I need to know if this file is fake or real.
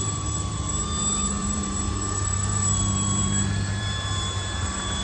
fake